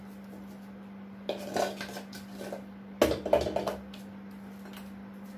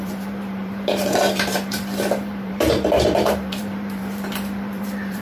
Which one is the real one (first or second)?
first